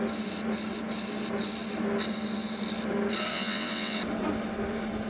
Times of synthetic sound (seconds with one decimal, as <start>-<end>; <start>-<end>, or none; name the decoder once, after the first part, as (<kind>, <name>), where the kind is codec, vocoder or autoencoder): 3.3-4.0 (vocoder, WaveNeXt)